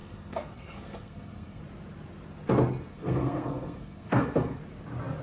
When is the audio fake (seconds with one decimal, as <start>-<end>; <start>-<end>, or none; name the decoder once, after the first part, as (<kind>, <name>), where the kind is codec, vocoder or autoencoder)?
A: 0.0-1.6 (codec, SNAC); 2.9-4.6